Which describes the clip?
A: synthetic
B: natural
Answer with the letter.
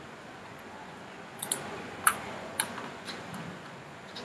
A